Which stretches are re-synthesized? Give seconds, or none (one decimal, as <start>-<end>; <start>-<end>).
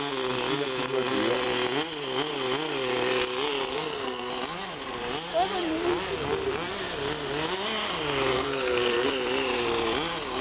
3.7-4.3; 8.3-9.1